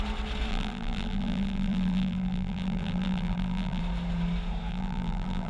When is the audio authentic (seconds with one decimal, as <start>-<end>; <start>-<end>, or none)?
0.0-0.5; 3.8-4.7